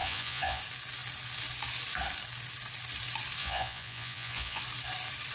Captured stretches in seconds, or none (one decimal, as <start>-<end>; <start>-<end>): 0.6-3.4; 4.6-5.3